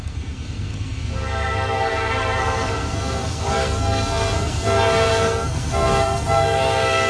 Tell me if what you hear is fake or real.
fake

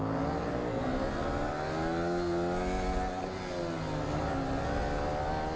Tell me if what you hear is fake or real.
real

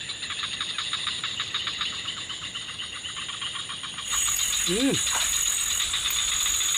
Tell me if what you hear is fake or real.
real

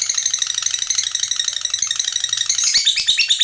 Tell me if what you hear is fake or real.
real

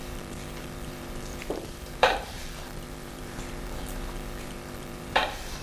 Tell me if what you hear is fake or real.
fake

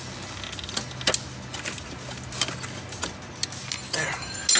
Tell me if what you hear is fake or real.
real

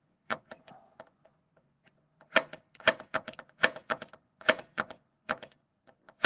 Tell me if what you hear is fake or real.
fake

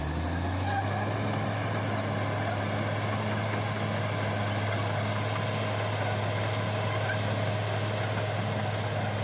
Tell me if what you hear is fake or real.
real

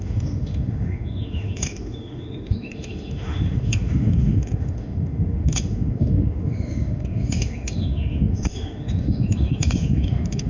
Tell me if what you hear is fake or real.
fake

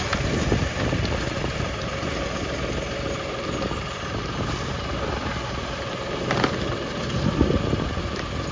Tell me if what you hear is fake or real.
real